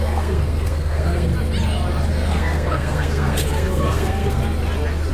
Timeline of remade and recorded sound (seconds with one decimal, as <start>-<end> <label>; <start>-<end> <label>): 0.0-1.3 remade; 1.3-2.1 recorded; 2.1-4.4 remade; 4.4-5.1 recorded